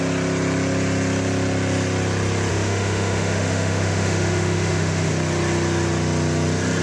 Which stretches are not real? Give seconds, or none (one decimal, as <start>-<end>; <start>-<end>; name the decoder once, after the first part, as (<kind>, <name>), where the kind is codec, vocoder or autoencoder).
2.5-5.1 (autoencoder, DAC-VAE)